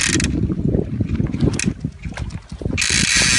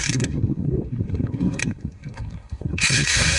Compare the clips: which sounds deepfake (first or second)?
second